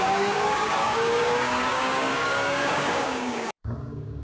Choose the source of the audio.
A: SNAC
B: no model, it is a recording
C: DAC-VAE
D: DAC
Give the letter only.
D